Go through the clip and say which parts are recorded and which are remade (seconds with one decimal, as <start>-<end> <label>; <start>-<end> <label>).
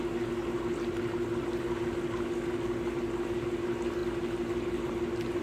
0.0-5.4 recorded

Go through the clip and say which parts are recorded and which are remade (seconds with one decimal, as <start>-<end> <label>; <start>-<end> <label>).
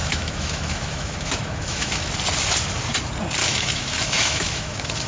0.0-2.1 remade; 2.1-3.4 recorded; 3.4-5.1 remade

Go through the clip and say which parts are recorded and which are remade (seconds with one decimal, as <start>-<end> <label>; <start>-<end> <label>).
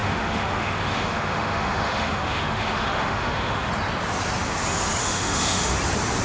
0.0-3.7 remade; 3.7-5.0 recorded; 5.0-5.7 remade; 5.7-6.2 recorded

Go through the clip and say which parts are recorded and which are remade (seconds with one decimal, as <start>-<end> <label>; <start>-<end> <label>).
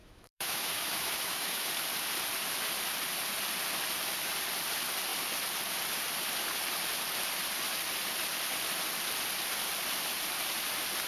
0.0-1.7 remade; 1.7-11.1 recorded